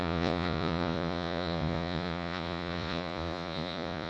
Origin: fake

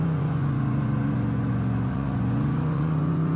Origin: fake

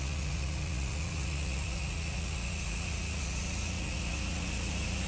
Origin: fake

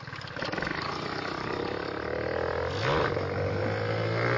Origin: real